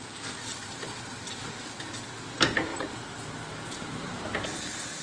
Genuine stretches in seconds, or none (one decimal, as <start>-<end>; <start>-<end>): 0.0-0.6; 1.3-2.7; 4.4-5.0